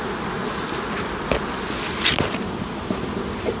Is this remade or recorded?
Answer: recorded